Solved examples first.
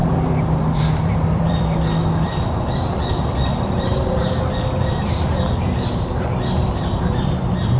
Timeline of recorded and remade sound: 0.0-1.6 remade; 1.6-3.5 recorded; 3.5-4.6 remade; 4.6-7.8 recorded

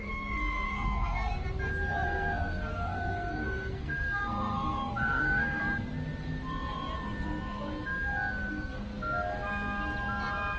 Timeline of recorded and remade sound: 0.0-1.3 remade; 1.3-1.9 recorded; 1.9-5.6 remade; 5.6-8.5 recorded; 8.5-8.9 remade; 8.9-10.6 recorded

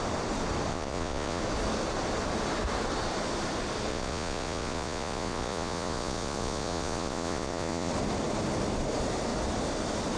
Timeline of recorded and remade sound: 0.0-0.7 recorded; 0.7-1.4 remade; 1.4-3.9 recorded; 3.9-7.9 remade; 7.9-10.2 recorded

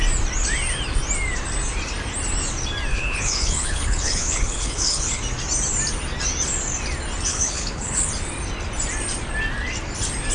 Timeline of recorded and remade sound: 0.0-2.9 recorded; 2.9-5.2 remade; 5.2-7.3 recorded; 7.3-8.1 remade; 8.1-10.3 recorded

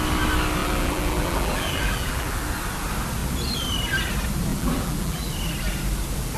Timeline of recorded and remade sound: 0.0-0.6 recorded; 0.6-2.4 remade; 2.4-4.5 recorded; 4.5-5.3 remade; 5.3-6.4 recorded